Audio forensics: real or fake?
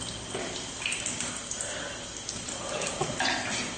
real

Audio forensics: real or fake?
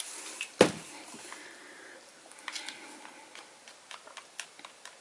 real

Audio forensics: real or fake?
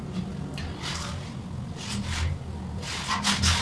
real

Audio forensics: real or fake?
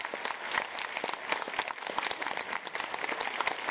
real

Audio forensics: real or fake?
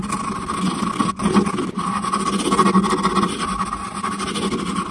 real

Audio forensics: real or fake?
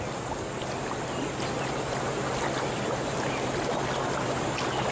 real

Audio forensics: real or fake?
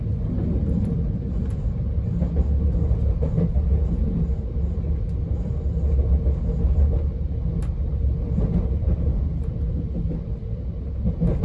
real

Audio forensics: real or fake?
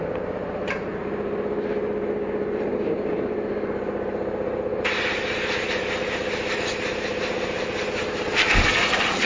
fake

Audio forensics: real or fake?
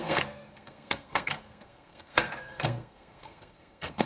fake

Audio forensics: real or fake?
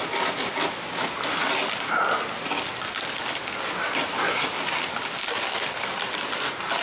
real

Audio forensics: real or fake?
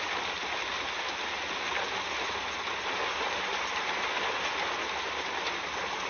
real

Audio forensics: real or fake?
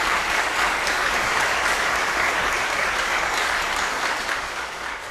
fake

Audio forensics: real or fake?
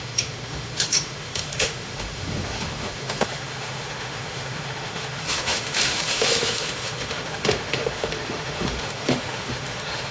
fake